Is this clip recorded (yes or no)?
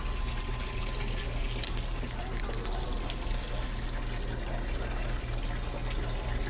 yes